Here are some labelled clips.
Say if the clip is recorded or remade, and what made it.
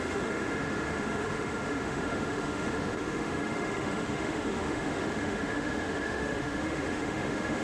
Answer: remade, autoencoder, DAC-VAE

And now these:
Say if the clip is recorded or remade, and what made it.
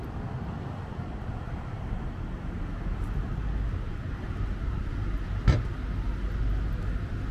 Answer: recorded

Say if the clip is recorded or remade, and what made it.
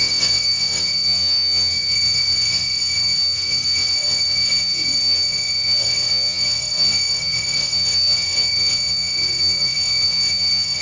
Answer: remade, vocoder, WaveNeXt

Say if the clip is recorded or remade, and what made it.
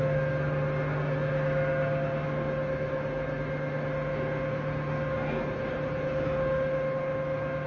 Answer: recorded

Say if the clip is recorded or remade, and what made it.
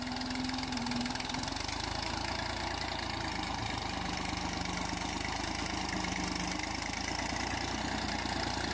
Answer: recorded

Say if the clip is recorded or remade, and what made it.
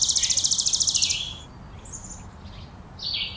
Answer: recorded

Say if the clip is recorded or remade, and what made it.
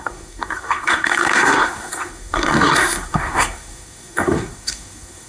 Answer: remade, codec, SNAC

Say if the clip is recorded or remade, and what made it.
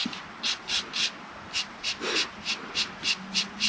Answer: recorded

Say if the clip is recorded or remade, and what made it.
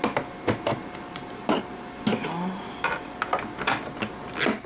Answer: recorded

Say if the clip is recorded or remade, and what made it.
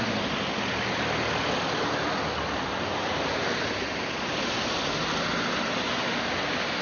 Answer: recorded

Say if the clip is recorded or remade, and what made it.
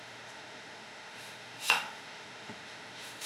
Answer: remade, autoencoder, DAC-VAE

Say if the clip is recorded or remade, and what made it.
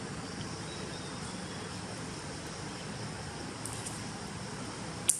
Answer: remade, vocoder, BigVGAN v2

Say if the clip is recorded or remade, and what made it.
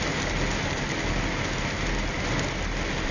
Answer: recorded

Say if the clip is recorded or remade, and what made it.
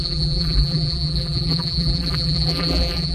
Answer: remade, vocoder, BigVGAN v2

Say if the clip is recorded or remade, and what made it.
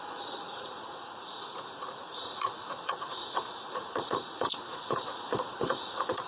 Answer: remade, vocoder, Vocos